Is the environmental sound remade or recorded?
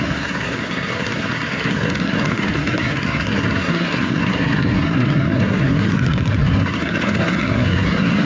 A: remade